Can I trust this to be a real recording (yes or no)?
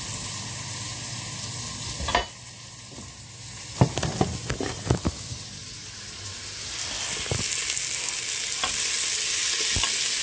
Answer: yes